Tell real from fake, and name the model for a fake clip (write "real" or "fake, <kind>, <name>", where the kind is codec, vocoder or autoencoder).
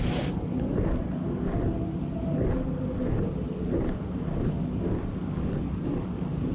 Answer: real